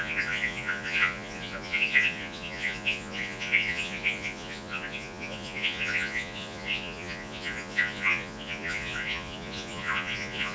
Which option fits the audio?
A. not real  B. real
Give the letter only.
A